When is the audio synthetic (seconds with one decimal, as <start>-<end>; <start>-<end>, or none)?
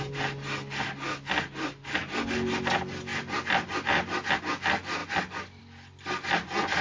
none